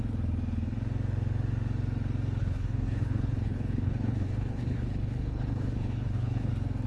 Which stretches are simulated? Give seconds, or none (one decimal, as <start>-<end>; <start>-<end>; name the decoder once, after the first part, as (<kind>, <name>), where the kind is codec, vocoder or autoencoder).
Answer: 2.4-6.5 (codec, HILCodec)